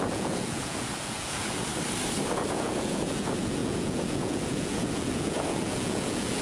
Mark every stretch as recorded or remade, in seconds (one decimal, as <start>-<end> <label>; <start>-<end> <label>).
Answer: 0.0-1.7 remade; 1.7-2.3 recorded; 2.3-6.4 remade